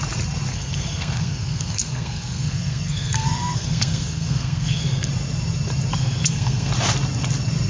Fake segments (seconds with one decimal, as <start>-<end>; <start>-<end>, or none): 0.5-5.1; 6.0-6.7